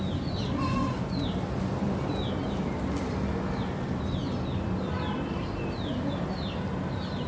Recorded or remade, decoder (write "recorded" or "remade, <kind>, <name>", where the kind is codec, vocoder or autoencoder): recorded